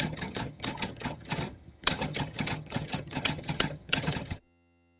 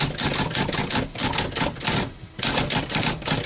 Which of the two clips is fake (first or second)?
first